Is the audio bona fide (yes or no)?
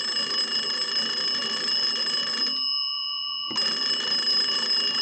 yes